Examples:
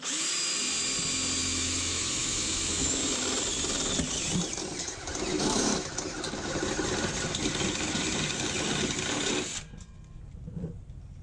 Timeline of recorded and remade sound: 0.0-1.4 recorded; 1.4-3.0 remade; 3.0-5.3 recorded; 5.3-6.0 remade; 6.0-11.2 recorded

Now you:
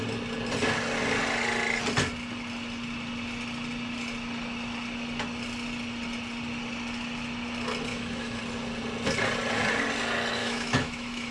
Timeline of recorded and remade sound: 0.0-7.9 recorded; 7.9-8.4 remade; 8.4-10.4 recorded; 10.4-11.3 remade

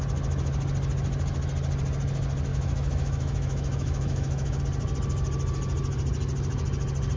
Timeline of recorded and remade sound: 0.0-2.5 recorded; 2.5-4.6 remade; 4.6-7.2 recorded

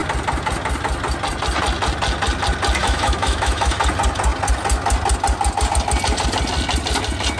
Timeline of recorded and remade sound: 0.0-2.8 recorded; 2.8-3.8 remade; 3.8-7.4 recorded

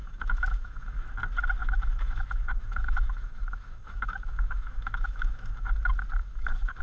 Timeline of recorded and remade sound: 0.0-1.1 remade; 1.1-1.6 recorded; 1.6-5.7 remade; 5.7-6.2 recorded; 6.2-6.8 remade

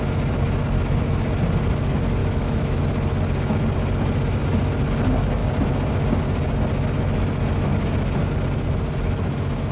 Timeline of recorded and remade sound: 0.0-2.2 recorded; 2.2-2.8 remade; 2.8-9.7 recorded